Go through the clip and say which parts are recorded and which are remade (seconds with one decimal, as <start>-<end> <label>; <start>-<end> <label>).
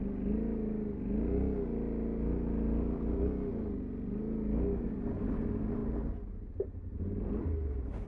0.0-8.1 recorded